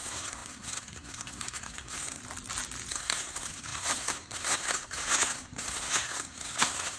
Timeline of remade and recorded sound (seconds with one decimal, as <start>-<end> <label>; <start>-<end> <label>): 0.0-2.2 remade; 2.2-2.9 recorded; 2.9-7.0 remade